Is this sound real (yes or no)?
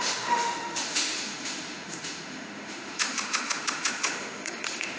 no